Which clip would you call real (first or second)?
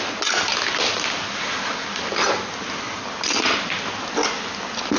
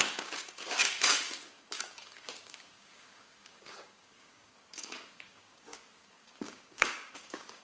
first